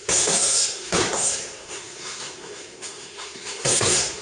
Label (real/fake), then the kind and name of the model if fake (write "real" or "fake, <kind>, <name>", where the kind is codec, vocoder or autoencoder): fake, codec, SNAC